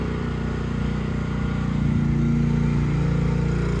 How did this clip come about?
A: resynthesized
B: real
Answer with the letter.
B